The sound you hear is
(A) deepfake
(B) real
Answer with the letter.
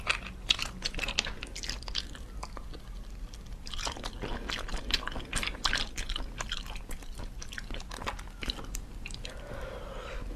B